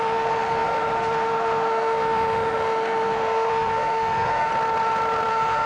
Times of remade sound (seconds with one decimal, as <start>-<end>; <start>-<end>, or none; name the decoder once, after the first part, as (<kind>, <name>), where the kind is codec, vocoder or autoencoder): 0.0-4.5 (autoencoder, DAC-VAE); 5.3-5.7